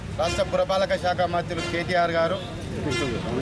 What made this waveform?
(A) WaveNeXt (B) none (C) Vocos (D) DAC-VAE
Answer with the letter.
B